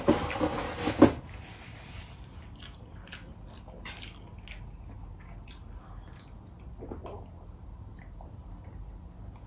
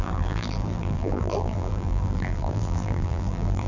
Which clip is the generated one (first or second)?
second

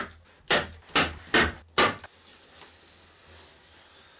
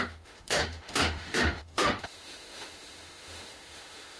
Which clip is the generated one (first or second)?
second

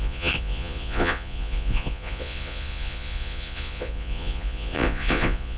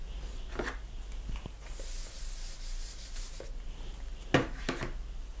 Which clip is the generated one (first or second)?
first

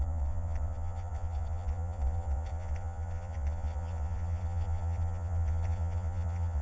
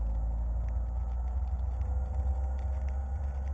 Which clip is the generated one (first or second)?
first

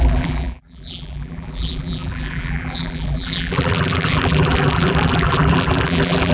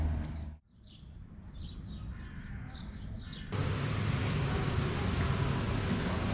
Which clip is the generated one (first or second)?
first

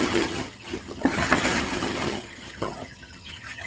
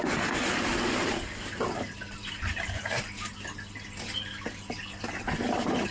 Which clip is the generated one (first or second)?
first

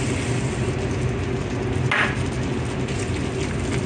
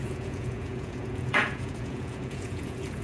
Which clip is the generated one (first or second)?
second